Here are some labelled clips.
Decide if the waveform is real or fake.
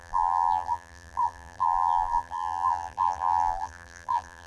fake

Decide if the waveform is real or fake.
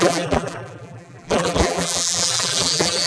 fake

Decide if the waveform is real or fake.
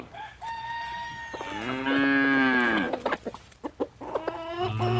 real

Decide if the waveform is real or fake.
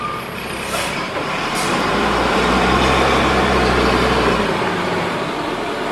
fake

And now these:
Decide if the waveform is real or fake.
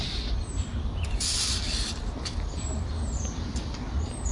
fake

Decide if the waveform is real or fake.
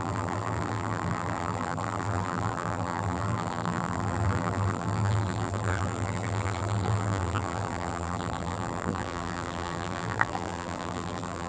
fake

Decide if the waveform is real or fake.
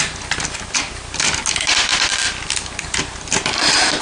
real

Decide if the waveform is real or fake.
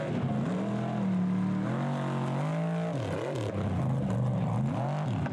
real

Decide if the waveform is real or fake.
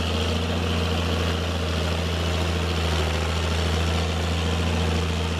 real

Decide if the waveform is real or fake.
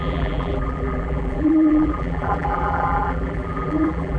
fake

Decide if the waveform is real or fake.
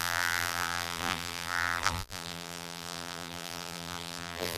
fake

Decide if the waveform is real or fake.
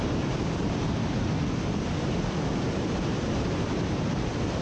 fake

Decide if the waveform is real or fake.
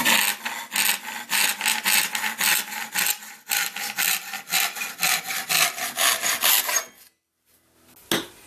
real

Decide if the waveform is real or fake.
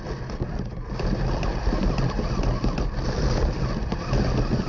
real